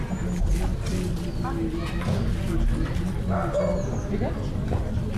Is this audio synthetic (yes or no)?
no